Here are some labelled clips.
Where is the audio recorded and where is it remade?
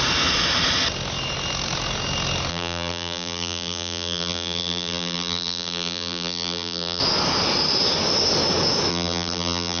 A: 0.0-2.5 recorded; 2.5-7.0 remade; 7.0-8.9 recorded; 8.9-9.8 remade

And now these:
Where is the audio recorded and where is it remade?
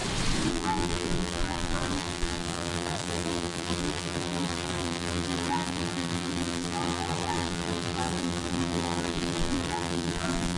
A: 0.0-0.5 recorded; 0.5-10.6 remade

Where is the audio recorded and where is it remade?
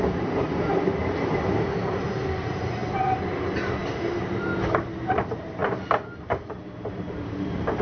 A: 0.0-2.8 remade; 2.8-3.9 recorded; 3.9-4.5 remade; 4.5-5.1 recorded; 5.1-7.8 remade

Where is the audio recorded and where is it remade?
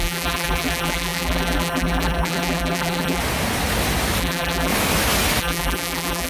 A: 0.0-3.2 remade; 3.2-4.2 recorded; 4.2-4.7 remade; 4.7-5.4 recorded; 5.4-6.3 remade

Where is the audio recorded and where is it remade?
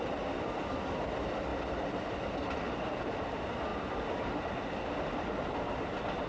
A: 0.0-6.3 remade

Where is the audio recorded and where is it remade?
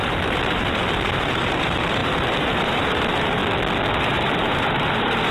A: 0.0-3.4 remade; 3.4-3.9 recorded; 3.9-5.3 remade